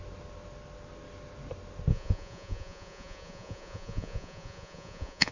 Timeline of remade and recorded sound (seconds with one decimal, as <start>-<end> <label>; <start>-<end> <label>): 0.0-1.9 recorded; 1.9-5.3 remade